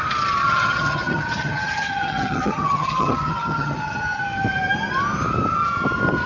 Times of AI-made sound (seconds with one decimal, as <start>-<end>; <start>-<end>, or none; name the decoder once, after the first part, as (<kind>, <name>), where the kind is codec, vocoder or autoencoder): 0.4-4.2 (vocoder, HiFi-GAN)